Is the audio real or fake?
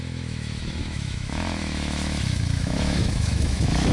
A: fake